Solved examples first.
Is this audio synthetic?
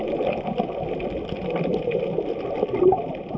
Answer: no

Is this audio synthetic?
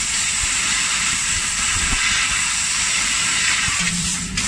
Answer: yes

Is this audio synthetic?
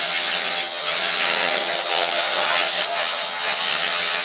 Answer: yes